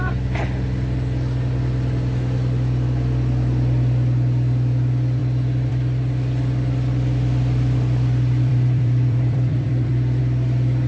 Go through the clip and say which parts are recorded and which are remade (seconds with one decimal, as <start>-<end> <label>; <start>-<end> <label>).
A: 0.0-8.5 recorded; 8.5-10.2 remade; 10.2-10.9 recorded

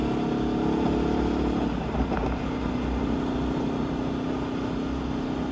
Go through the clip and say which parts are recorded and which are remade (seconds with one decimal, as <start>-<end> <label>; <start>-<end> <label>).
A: 0.0-5.5 recorded

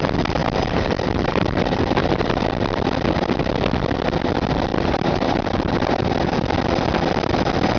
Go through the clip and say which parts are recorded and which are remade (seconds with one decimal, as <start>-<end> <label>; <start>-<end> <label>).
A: 0.0-0.4 recorded; 0.4-2.4 remade; 2.4-4.7 recorded; 4.7-6.3 remade; 6.3-7.8 recorded

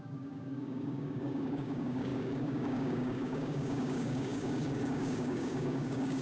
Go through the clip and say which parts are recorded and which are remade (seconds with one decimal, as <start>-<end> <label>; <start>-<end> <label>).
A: 0.0-6.2 remade

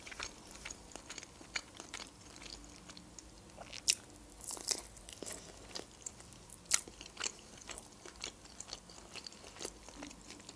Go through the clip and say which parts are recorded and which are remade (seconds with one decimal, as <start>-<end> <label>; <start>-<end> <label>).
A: 0.0-2.5 remade; 2.5-5.0 recorded; 5.0-10.6 remade

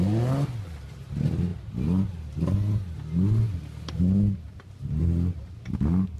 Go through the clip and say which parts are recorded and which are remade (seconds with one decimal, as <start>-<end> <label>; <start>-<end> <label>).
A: 0.0-6.2 recorded